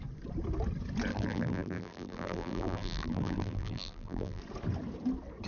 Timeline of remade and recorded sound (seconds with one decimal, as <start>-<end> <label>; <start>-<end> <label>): 0.0-1.1 recorded; 1.1-4.4 remade; 4.4-5.5 recorded